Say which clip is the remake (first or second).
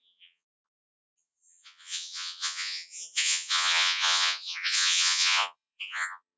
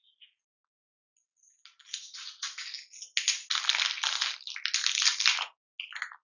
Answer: first